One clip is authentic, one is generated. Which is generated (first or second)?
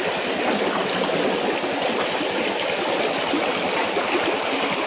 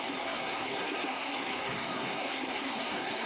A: second